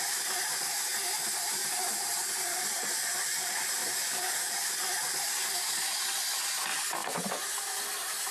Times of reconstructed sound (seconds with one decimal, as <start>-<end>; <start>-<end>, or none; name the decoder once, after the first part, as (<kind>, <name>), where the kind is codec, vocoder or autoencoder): 1.6-2.3 (vocoder, BigVGAN v2); 7.0-7.5